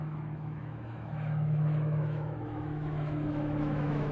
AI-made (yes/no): yes